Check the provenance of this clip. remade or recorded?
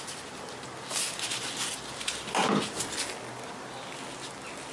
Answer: recorded